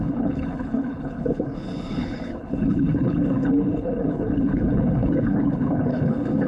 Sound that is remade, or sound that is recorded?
remade